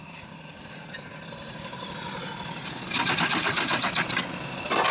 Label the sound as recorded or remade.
recorded